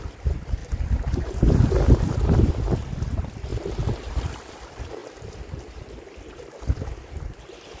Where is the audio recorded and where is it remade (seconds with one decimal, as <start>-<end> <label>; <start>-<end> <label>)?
0.0-0.6 remade; 0.6-2.5 recorded; 2.5-3.5 remade; 3.5-4.5 recorded; 4.5-7.8 remade